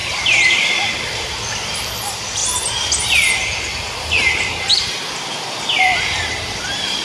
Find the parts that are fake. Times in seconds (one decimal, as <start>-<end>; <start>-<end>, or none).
0.0-7.0